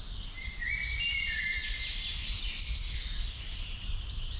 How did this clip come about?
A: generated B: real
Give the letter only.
B